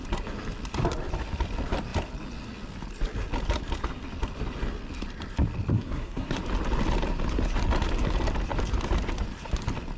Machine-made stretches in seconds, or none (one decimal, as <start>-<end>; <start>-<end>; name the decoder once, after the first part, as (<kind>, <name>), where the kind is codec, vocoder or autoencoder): 5.7-6.4 (codec, SNAC)